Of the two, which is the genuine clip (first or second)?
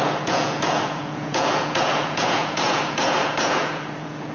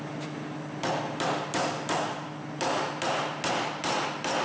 second